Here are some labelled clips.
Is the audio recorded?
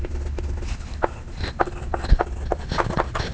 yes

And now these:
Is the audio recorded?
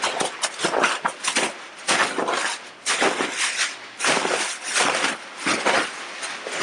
yes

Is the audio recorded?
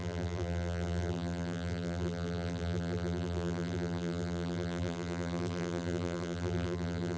no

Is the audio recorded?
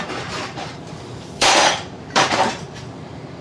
no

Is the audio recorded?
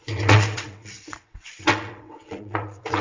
no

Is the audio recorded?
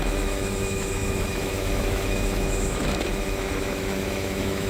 no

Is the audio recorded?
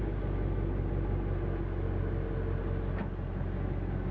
yes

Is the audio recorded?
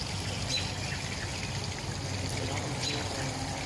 yes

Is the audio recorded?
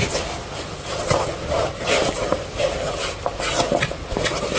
yes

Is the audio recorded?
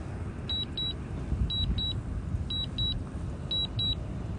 yes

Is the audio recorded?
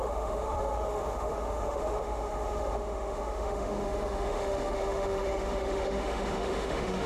no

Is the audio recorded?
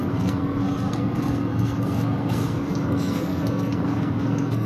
no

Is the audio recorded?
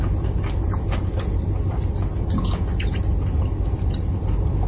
yes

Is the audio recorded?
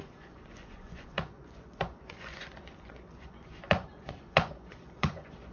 no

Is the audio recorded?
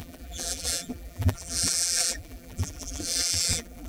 no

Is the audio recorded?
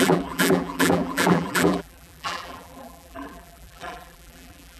no